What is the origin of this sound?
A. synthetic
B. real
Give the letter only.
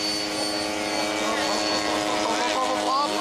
B